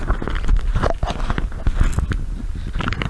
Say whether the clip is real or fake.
real